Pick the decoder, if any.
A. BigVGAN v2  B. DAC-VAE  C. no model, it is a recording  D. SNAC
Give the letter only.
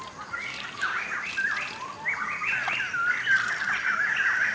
C